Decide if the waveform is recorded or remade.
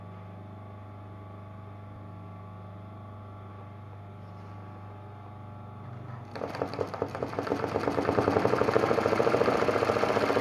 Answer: recorded